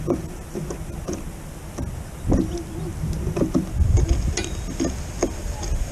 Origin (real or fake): real